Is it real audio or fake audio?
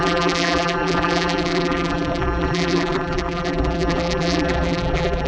fake